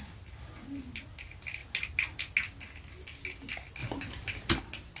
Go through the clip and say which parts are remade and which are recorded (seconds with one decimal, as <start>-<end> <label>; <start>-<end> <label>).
0.0-5.0 recorded